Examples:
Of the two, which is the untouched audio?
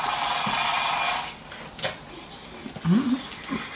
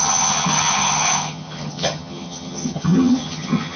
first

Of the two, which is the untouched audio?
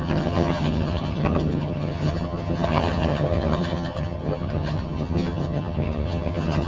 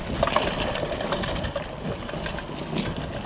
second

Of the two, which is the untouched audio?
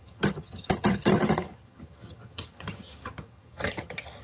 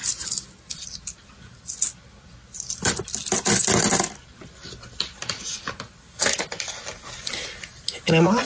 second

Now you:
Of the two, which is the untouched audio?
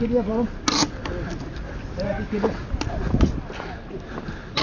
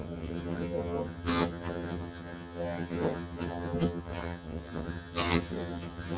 first